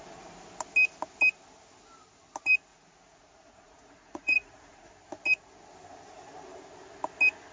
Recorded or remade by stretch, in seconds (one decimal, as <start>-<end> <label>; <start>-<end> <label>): 0.0-2.7 recorded; 2.7-4.9 remade; 4.9-7.5 recorded